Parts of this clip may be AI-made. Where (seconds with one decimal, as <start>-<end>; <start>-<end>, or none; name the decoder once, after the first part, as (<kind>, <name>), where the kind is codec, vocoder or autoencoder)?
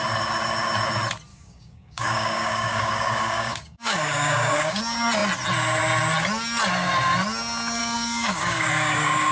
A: 1.3-4.8 (codec, DAC); 7.8-9.3